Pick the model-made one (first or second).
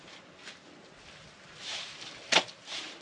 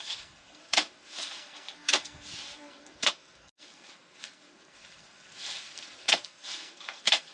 second